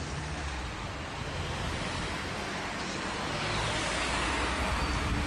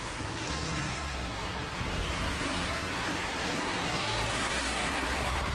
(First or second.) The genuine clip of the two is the first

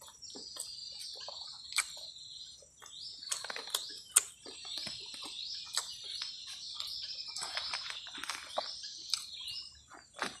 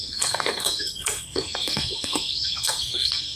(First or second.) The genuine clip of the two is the first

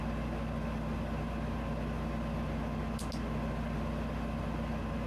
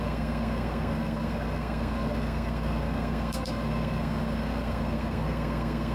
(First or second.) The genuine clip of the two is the first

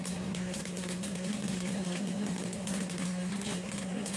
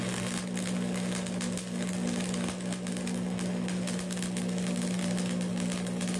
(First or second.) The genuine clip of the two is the second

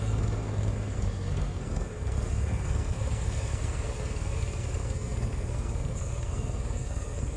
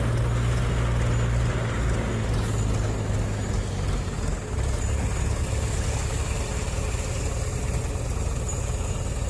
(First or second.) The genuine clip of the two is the second